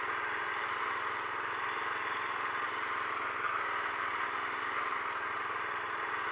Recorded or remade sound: recorded